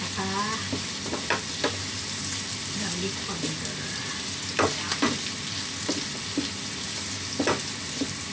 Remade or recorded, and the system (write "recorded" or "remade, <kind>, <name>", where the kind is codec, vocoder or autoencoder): recorded